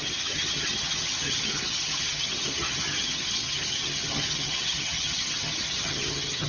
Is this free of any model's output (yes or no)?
no